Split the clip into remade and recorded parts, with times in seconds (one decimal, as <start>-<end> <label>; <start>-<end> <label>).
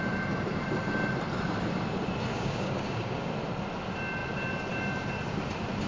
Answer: 0.0-2.3 recorded; 2.3-3.3 remade; 3.3-5.9 recorded